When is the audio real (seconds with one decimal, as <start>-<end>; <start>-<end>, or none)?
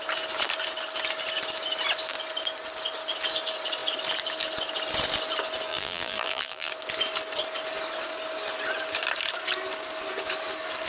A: 0.0-5.7; 6.7-10.9